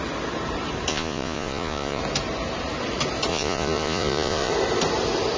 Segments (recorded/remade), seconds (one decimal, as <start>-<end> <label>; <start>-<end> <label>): 0.0-0.9 recorded; 0.9-2.0 remade; 2.0-3.3 recorded; 3.3-4.5 remade; 4.5-5.4 recorded